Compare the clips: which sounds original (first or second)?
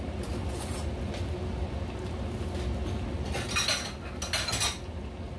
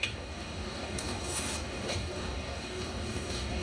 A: first